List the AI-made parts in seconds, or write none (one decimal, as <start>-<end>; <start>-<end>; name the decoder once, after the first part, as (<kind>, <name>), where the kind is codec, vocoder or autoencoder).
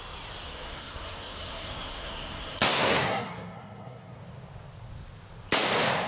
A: 0.5-4.2 (codec, SNAC)